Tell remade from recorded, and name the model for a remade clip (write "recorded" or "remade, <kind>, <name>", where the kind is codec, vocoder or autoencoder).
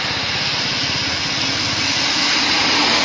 recorded